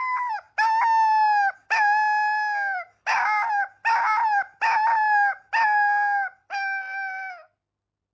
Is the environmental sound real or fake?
real